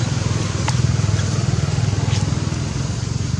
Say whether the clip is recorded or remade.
recorded